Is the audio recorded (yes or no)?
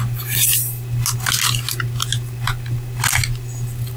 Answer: yes